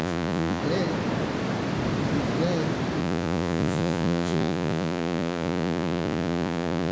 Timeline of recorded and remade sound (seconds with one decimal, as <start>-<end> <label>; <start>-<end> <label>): 0.0-0.6 remade; 0.6-3.0 recorded; 3.0-6.9 remade